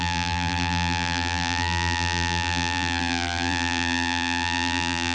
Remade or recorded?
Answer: remade